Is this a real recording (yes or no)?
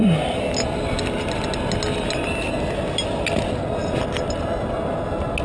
yes